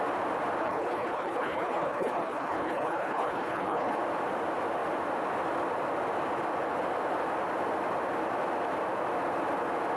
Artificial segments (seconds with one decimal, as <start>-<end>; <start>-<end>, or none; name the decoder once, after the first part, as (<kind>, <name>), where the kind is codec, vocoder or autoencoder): 0.6-4.0 (codec, HILCodec)